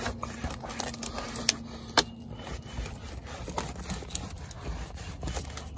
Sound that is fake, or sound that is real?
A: real